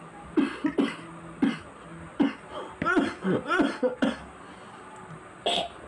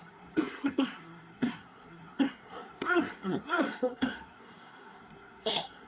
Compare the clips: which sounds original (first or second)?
first